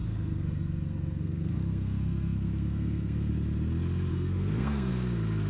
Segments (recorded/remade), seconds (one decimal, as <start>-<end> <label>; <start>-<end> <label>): 0.0-3.3 remade; 3.3-4.1 recorded; 4.1-4.9 remade; 4.9-5.5 recorded

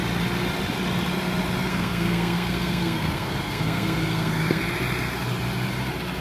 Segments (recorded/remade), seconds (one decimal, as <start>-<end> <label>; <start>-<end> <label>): 0.0-1.7 recorded; 1.7-4.6 remade; 4.6-6.2 recorded

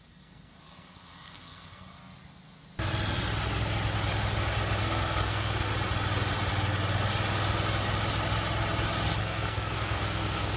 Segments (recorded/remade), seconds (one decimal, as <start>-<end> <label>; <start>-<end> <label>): 0.0-2.0 remade; 2.0-4.8 recorded; 4.8-5.7 remade; 5.7-9.2 recorded; 9.2-10.6 remade